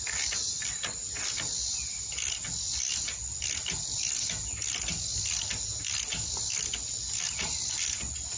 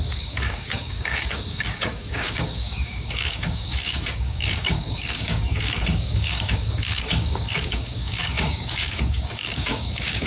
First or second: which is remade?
second